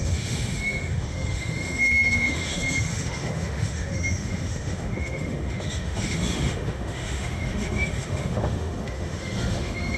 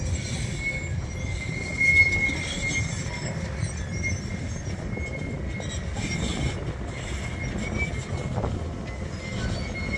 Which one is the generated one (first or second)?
first